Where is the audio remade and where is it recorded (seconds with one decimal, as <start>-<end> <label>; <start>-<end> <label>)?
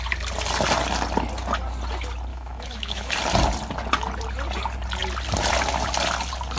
0.0-2.3 recorded; 2.3-3.1 remade; 3.1-6.6 recorded